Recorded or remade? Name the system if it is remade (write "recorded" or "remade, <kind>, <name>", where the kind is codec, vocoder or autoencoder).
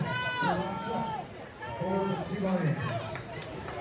remade, vocoder, BigVGAN v2